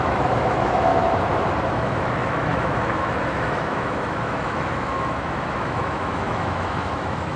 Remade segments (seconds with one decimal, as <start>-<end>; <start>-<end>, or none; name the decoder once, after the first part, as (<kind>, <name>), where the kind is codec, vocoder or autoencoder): 0.0-0.9 (autoencoder, DAC-VAE); 1.7-7.4